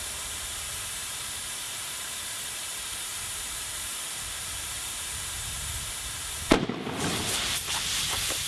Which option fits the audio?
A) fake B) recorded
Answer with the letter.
A